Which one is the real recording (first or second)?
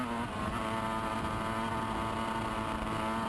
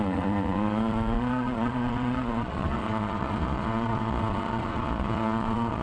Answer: first